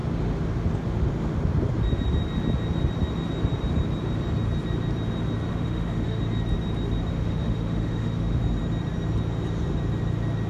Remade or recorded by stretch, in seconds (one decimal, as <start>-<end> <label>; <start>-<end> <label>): 0.0-5.5 recorded; 5.5-6.2 remade; 6.2-7.1 recorded; 7.1-8.4 remade; 8.4-10.5 recorded